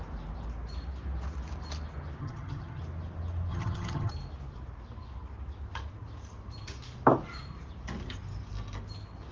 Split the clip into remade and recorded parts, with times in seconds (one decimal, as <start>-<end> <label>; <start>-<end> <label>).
0.0-2.2 recorded; 2.2-2.8 remade; 2.8-3.5 recorded; 3.5-4.1 remade; 4.1-9.3 recorded